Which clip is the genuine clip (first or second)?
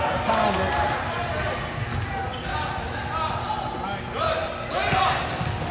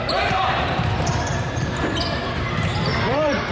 first